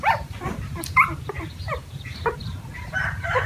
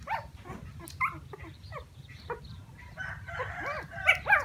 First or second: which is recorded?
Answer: second